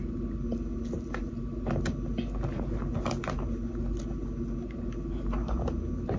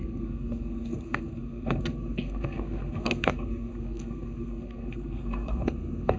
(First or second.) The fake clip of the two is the second